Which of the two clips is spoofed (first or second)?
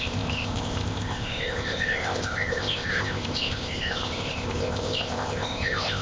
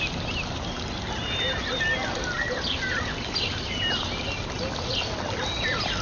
first